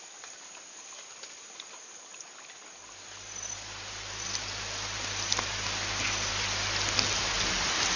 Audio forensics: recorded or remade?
recorded